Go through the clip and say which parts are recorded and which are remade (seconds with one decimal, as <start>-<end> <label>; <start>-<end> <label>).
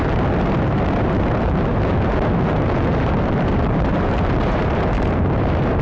0.0-5.8 remade